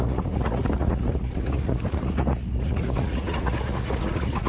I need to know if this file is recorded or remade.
remade